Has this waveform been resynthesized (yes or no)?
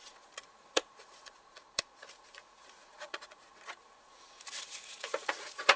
yes